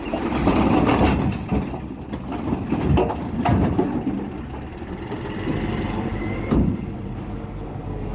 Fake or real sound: real